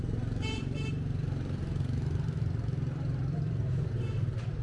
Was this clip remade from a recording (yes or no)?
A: yes